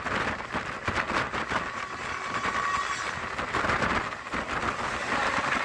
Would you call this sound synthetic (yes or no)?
no